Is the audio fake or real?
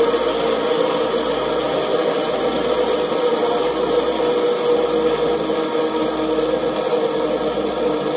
real